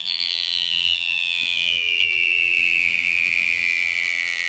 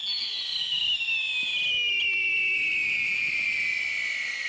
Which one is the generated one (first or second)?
first